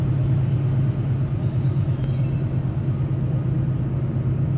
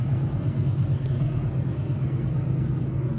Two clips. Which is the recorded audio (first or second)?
first